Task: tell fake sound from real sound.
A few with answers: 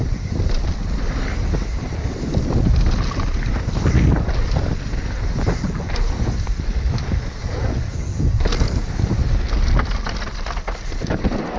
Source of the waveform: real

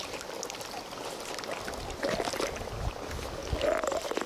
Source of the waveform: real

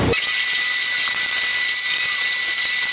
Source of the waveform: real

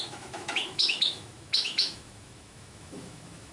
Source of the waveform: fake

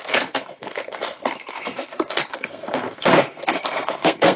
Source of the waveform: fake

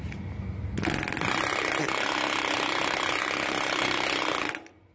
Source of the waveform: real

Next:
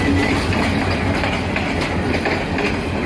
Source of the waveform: real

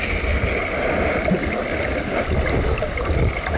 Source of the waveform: real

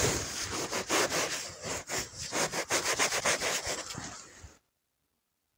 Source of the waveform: fake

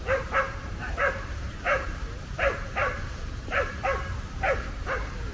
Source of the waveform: fake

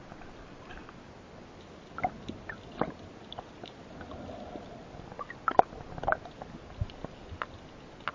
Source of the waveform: real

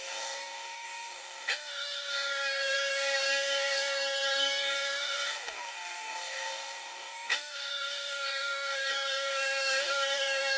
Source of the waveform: fake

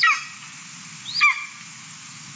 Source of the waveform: real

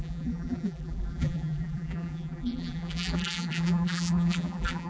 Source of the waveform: fake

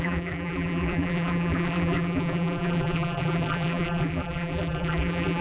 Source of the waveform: fake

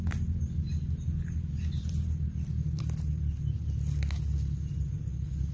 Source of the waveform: real